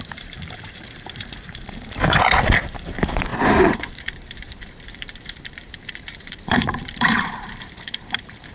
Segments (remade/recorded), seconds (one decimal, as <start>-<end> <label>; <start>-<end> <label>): 0.0-8.5 remade